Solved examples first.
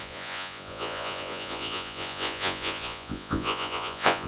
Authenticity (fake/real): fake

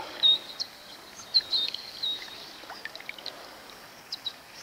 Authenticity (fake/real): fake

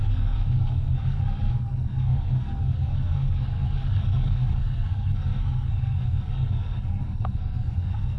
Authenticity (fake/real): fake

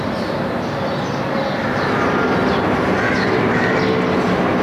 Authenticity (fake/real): fake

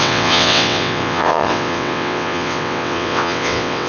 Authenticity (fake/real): fake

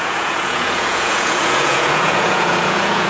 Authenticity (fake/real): fake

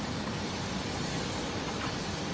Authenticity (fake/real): real